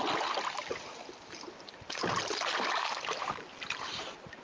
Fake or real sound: real